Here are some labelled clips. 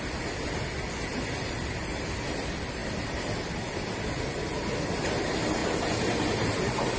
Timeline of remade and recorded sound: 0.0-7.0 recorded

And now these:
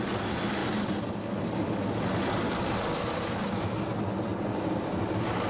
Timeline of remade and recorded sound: 0.0-5.5 recorded

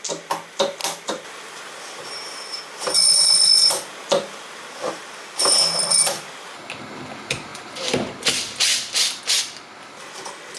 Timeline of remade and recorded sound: 0.0-7.5 recorded; 7.5-9.2 remade; 9.2-10.6 recorded

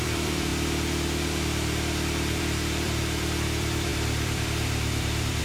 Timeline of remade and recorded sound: 0.0-0.5 remade; 0.5-2.4 recorded; 2.4-5.4 remade

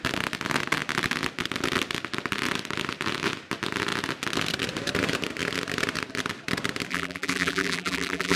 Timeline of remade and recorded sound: 0.0-6.9 recorded; 6.9-8.4 remade